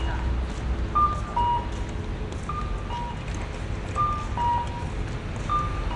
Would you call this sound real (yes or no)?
yes